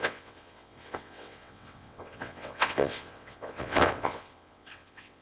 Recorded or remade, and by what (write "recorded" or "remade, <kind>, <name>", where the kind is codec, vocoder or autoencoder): remade, vocoder, WaveNeXt